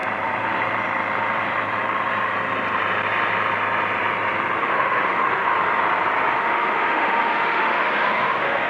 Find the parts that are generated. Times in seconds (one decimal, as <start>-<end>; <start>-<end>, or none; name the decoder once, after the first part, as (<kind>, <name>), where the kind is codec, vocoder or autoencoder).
4.6-5.5 (autoencoder, DAC-VAE); 6.3-8.7